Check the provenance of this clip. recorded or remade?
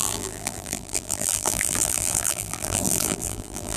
remade